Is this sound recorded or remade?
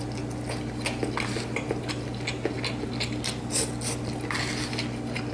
recorded